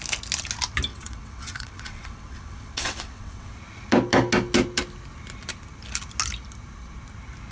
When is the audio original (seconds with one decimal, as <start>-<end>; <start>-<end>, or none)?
0.0-0.9; 3.5-7.5